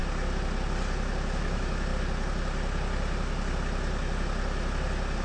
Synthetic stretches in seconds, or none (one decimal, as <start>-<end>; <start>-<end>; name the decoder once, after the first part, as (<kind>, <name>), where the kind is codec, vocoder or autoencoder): 1.4-1.9 (autoencoder, DAC-VAE)